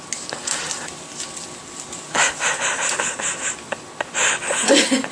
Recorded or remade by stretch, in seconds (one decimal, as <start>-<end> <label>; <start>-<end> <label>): 0.0-5.1 recorded

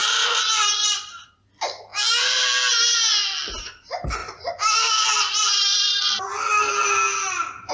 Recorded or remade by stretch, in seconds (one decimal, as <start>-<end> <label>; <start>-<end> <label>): 0.0-1.2 remade; 1.2-4.2 recorded; 4.2-6.0 remade; 6.0-7.7 recorded

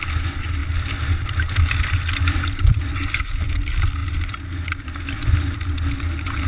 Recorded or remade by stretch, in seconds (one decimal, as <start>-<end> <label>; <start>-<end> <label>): 0.0-6.5 recorded

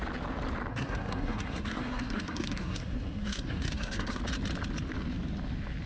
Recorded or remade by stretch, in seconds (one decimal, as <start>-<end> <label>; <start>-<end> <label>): 0.0-0.7 recorded; 0.7-4.2 remade; 4.2-5.9 recorded

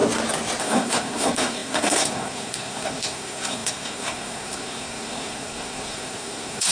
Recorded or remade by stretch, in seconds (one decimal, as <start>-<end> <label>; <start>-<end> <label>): 0.0-0.6 recorded; 0.6-6.7 remade

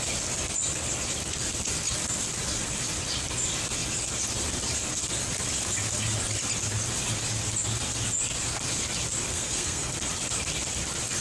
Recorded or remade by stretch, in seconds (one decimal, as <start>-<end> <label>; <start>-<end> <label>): 0.0-9.3 recorded; 9.3-9.9 remade; 9.9-11.2 recorded